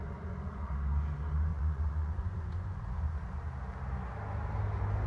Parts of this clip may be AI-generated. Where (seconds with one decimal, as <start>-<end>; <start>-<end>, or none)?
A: 0.0-0.7; 1.5-2.9